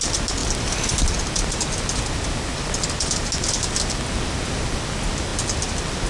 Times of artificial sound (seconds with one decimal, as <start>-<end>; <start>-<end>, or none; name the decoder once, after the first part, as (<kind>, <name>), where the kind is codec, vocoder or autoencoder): none